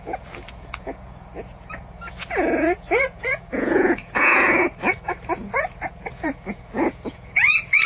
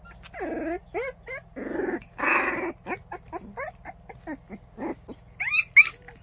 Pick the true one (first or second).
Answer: second